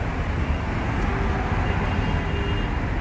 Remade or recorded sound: recorded